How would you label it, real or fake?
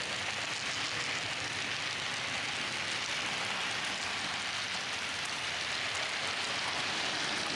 real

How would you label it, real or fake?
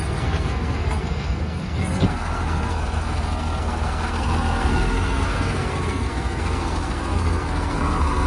fake